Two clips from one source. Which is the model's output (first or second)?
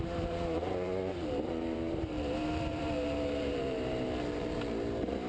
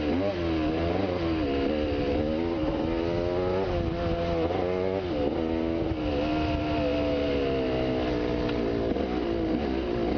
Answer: first